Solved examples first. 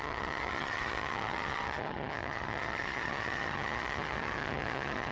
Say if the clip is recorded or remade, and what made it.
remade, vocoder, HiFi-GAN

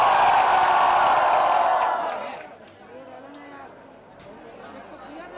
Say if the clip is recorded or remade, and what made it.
recorded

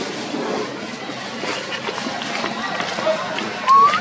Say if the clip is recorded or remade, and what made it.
recorded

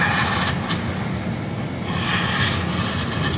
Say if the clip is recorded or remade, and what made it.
recorded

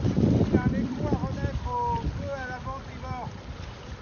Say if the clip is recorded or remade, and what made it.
recorded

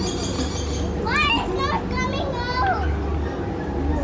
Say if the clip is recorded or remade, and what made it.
recorded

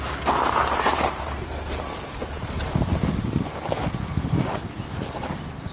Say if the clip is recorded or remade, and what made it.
recorded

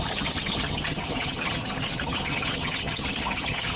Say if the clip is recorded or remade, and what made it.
remade, vocoder, HiFi-GAN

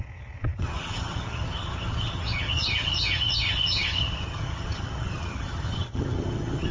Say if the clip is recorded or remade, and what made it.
remade, vocoder, HiFi-GAN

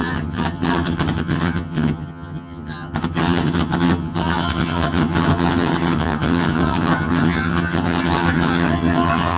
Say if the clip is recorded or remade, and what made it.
remade, vocoder, HiFi-GAN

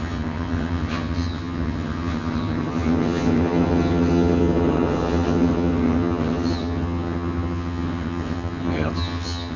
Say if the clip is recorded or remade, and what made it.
remade, vocoder, HiFi-GAN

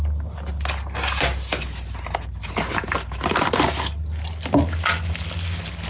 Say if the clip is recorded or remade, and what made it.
recorded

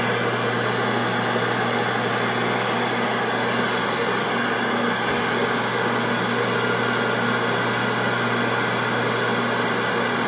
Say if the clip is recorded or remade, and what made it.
recorded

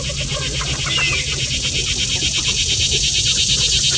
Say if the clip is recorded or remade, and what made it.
recorded